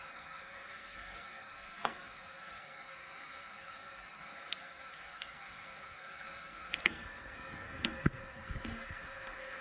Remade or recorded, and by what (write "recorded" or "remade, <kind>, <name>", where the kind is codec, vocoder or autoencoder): remade, codec, SNAC